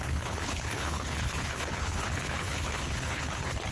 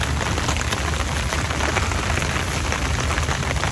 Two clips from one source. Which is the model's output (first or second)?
first